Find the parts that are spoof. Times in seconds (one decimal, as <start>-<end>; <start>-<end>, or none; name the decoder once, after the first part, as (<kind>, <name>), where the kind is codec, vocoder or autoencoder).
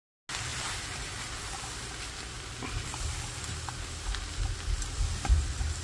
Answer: 0.5-3.7 (vocoder, BigVGAN v2)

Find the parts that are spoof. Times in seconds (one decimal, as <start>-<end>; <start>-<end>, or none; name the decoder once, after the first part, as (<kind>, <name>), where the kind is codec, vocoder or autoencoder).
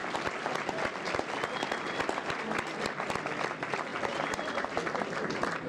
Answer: 3.9-4.8 (vocoder, BigVGAN v2)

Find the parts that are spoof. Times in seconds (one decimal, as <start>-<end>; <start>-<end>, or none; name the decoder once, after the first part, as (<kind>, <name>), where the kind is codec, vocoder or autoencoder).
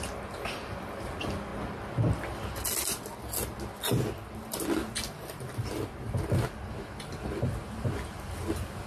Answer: none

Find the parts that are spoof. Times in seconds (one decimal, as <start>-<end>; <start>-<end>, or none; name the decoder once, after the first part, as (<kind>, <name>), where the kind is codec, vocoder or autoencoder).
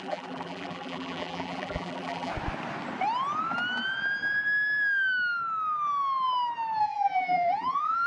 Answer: 0.0-2.3 (vocoder, BigVGAN v2); 6.8-8.1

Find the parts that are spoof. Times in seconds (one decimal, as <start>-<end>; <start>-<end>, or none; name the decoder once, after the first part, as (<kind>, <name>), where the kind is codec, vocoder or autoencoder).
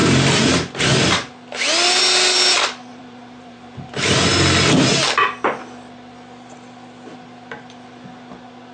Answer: 0.0-0.8 (vocoder, BigVGAN v2); 2.9-4.3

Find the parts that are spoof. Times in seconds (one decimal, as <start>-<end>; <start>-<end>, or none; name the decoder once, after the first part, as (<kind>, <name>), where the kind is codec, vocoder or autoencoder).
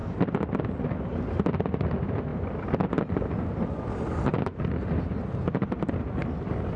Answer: none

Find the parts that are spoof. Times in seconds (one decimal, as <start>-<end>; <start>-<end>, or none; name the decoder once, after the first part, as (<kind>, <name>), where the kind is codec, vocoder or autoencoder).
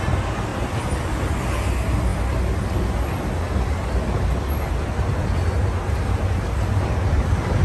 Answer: none